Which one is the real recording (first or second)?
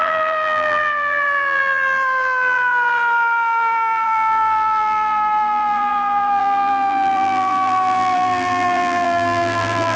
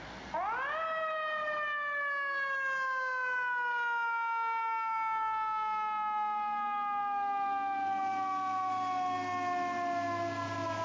second